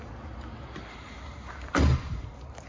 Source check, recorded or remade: recorded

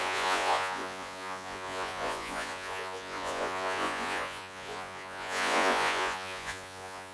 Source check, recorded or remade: remade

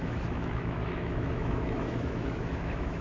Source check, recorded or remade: remade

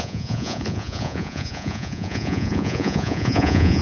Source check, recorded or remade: remade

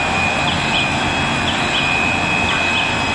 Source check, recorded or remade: recorded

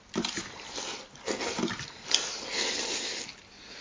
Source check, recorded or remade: recorded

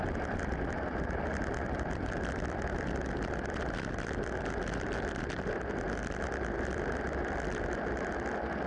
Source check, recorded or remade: recorded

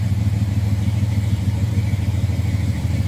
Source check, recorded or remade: remade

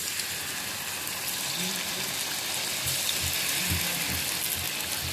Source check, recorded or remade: recorded